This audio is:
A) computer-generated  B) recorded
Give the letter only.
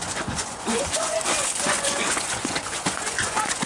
A